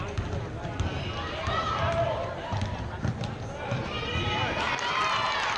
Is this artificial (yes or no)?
no